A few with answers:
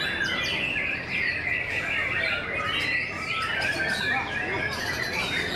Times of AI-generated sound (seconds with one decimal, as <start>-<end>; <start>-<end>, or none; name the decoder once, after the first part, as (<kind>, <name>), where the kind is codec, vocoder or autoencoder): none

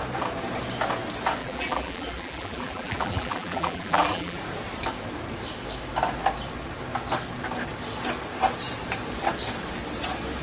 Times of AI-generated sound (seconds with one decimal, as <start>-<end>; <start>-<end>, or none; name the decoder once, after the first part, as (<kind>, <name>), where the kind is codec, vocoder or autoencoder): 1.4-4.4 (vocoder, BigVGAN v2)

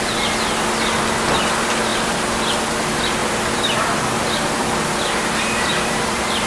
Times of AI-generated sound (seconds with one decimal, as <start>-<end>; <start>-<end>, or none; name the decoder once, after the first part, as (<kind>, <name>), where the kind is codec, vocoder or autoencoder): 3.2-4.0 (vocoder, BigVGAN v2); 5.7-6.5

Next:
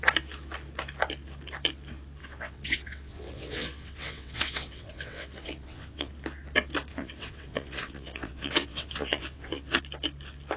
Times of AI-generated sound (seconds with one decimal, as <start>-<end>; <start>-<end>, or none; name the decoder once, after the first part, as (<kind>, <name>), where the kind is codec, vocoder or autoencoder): 2.2-6.1 (vocoder, WaveNeXt); 6.9-9.8

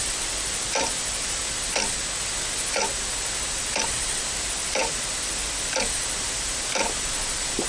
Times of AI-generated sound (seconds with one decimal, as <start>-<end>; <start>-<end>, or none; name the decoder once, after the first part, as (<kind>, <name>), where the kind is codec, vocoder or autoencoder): 0.0-1.4 (vocoder, BigVGAN v2); 3.8-7.7

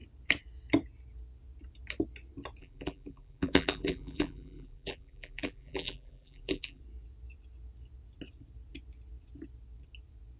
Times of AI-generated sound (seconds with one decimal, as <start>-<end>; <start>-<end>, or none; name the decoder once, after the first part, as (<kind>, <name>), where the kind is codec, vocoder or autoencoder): 2.6-6.8 (vocoder, BigVGAN v2)

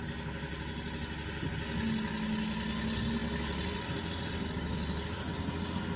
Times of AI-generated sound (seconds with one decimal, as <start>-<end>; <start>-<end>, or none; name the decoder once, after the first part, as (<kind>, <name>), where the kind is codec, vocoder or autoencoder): none

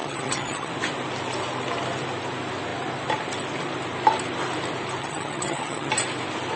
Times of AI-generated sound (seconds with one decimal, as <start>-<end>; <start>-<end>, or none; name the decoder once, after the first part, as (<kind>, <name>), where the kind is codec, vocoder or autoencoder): 0.0-0.7 (vocoder, HiFi-GAN); 5.0-5.9